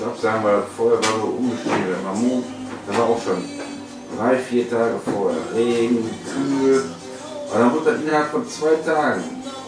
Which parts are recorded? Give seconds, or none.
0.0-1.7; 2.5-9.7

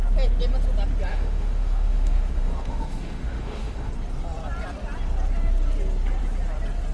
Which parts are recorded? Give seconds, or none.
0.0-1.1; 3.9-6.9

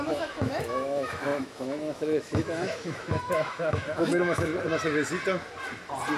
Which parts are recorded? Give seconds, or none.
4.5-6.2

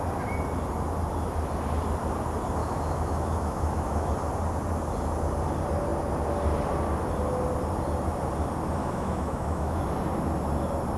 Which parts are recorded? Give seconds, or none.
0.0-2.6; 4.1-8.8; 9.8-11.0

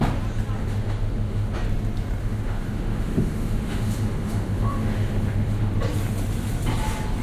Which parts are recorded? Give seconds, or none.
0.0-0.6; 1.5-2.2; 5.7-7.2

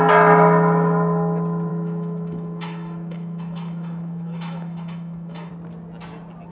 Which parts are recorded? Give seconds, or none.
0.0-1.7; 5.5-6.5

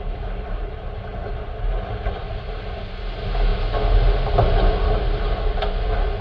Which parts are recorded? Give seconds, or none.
0.0-6.2